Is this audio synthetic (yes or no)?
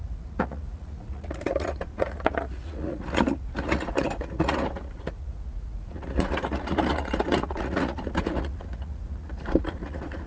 yes